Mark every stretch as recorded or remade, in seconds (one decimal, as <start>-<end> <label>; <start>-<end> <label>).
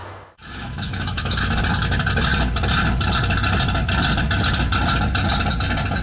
0.0-1.6 remade; 1.6-6.0 recorded